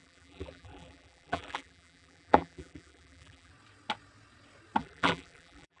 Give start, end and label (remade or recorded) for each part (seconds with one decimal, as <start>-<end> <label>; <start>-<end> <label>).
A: 0.0-3.5 remade; 3.5-4.8 recorded; 4.8-5.8 remade